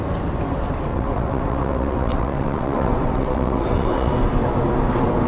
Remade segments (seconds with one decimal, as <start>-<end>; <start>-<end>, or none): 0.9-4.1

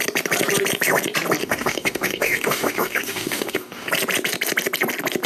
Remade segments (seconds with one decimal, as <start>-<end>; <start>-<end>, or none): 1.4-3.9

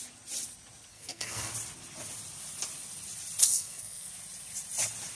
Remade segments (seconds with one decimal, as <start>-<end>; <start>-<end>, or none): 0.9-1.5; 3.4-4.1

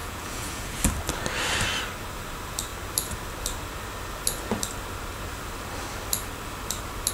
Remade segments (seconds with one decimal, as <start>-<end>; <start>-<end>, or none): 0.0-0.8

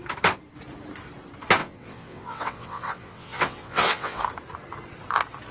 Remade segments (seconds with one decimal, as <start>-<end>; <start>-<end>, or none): 1.6-4.2

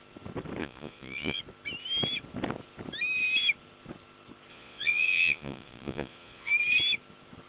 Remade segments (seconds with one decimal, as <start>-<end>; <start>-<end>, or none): 0.6-1.4; 4.5-6.5

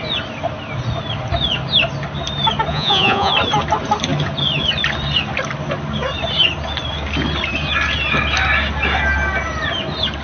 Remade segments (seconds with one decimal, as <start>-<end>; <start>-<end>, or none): 2.7-3.3

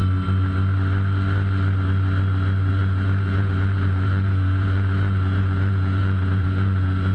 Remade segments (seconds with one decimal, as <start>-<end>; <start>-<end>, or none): 2.7-7.1